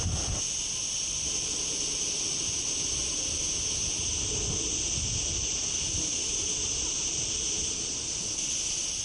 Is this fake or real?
real